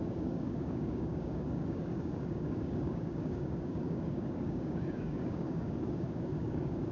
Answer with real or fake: fake